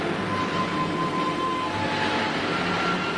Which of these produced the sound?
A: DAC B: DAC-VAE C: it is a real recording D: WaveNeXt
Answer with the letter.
C